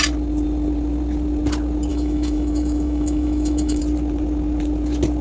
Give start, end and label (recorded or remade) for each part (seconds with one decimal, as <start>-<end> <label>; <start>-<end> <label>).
0.0-1.9 recorded; 1.9-3.8 remade; 3.8-5.2 recorded